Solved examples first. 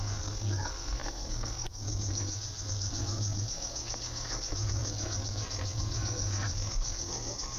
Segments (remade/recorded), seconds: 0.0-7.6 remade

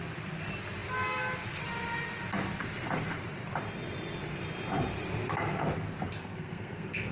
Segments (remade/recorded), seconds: 0.0-6.2 recorded; 6.2-7.1 remade

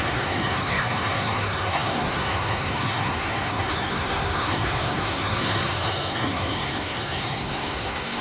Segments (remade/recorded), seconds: 0.0-8.2 remade